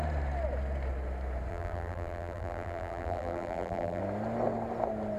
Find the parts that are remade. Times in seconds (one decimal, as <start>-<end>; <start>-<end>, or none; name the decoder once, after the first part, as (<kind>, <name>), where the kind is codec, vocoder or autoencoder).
1.5-4.0 (vocoder, BigVGAN v2)